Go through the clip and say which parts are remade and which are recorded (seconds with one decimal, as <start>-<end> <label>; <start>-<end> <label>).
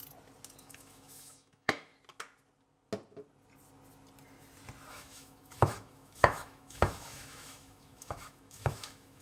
0.0-0.6 recorded; 0.6-1.9 remade; 1.9-4.9 recorded; 4.9-9.2 remade